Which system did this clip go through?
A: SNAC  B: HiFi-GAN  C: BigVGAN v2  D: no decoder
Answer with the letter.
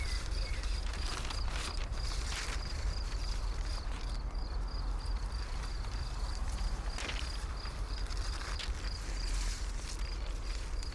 C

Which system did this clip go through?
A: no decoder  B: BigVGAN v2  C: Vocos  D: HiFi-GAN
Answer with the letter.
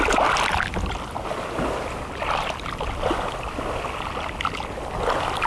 A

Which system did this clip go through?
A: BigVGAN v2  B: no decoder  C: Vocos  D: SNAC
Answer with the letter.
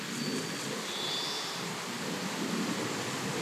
B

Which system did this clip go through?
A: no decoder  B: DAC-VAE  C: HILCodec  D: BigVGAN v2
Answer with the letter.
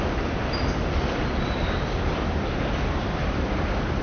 A